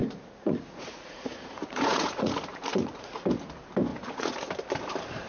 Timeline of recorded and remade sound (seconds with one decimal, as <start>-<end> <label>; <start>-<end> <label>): 0.0-3.2 remade; 3.2-3.9 recorded; 3.9-4.5 remade; 4.5-5.3 recorded